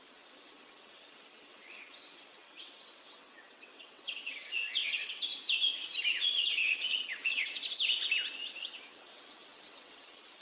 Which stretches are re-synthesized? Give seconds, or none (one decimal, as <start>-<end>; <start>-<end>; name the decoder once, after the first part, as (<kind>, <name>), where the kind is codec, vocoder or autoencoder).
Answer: 0.0-5.3 (vocoder, WaveNeXt); 6.2-7.6; 8.6-10.4